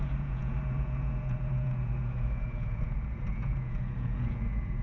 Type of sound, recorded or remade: remade